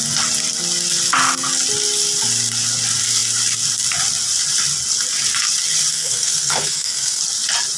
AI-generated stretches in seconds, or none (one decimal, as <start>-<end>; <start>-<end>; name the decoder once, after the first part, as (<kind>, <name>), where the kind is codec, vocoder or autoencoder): 5.9-7.2 (codec, SNAC)

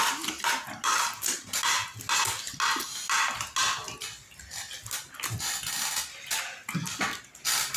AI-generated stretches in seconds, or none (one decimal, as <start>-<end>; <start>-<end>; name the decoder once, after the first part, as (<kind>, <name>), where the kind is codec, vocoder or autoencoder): none

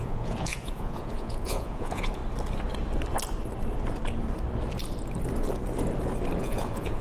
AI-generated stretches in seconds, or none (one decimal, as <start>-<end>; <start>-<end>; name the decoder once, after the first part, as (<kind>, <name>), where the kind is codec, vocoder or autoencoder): 0.0-2.2 (vocoder, Vocos); 6.4-7.0

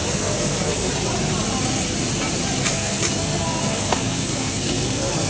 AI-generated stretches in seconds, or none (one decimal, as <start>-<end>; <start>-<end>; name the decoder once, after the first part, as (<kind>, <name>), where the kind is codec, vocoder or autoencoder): 0.0-0.9 (codec, SNAC); 2.6-5.3